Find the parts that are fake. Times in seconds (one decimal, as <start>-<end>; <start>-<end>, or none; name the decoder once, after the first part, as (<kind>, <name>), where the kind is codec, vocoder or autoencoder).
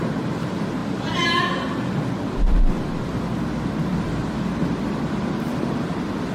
0.0-0.8 (vocoder, BigVGAN v2); 3.8-6.3